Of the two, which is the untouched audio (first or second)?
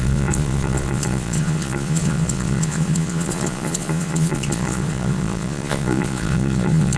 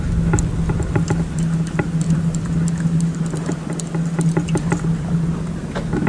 second